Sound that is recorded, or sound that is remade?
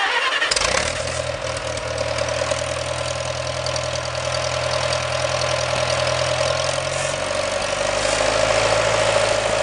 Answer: recorded